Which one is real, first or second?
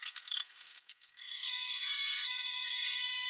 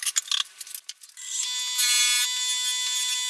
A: second